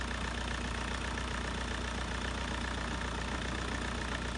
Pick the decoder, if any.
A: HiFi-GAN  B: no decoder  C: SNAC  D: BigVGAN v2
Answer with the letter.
B